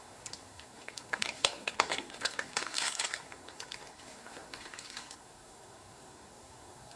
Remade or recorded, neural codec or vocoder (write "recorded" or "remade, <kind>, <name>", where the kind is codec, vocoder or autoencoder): remade, codec, SNAC